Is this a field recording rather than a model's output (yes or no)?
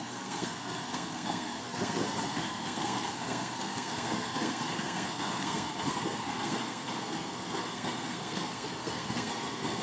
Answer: no